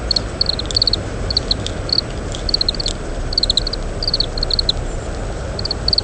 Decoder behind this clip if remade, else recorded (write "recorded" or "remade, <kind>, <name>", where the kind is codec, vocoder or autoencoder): recorded